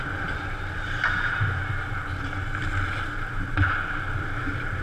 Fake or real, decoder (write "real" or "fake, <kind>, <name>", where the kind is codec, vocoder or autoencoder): real